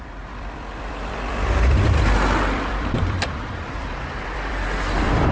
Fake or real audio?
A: fake